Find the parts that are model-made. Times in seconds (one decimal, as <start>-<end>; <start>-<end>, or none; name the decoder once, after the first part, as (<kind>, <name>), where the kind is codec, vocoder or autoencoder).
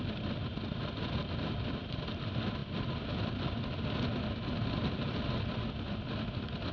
none